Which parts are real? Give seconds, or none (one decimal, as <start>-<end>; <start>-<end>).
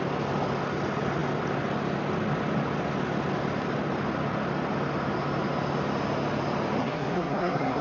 0.0-6.8